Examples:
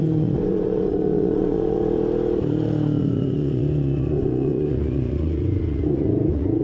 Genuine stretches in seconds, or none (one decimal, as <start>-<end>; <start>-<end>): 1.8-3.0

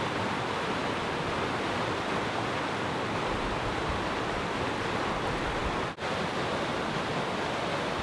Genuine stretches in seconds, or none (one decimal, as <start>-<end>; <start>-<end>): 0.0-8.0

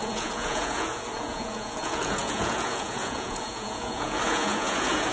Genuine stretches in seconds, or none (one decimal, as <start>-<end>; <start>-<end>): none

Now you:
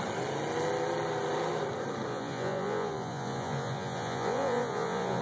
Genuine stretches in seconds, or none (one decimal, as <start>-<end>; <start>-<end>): 0.0-2.1

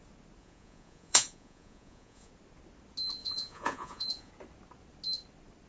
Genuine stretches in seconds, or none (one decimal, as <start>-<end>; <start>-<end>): 0.0-0.4; 2.3-3.2; 4.3-5.7